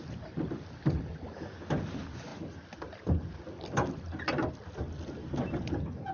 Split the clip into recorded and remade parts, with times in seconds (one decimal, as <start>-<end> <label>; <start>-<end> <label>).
0.0-6.1 recorded